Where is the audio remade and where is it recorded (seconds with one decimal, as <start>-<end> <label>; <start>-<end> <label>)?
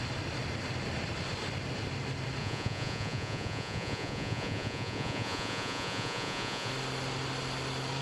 0.0-2.4 recorded; 2.4-6.7 remade; 6.7-8.0 recorded